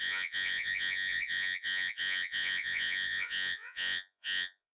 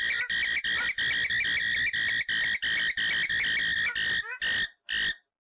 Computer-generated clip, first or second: first